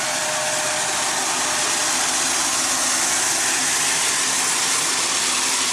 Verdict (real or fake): real